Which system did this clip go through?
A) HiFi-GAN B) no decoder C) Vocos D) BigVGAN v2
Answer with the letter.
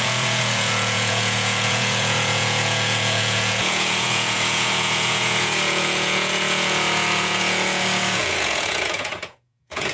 C